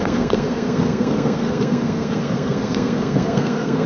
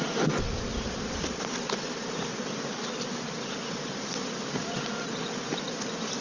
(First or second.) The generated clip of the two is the first